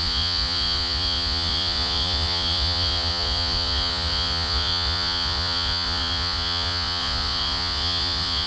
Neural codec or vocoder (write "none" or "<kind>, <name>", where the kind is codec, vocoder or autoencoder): vocoder, Vocos